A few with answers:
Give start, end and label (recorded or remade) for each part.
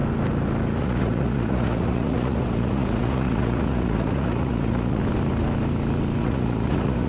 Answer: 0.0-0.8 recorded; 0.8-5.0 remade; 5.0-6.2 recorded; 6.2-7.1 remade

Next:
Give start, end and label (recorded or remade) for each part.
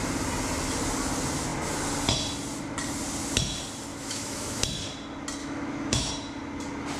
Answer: 0.0-3.9 recorded; 3.9-4.6 remade; 4.6-5.4 recorded; 5.4-6.1 remade; 6.1-7.0 recorded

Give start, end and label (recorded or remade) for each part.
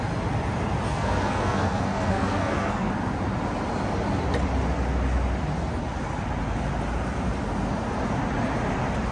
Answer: 0.0-0.9 recorded; 0.9-2.9 remade; 2.9-9.1 recorded